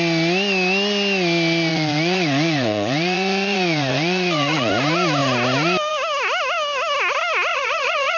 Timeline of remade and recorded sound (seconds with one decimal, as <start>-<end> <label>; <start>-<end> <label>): 0.0-1.7 recorded; 1.7-4.7 remade; 4.7-7.5 recorded; 7.5-8.2 remade